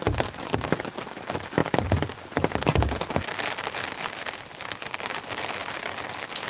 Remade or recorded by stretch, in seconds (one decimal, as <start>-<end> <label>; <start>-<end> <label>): 0.0-6.5 recorded